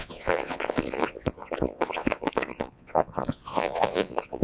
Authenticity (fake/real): fake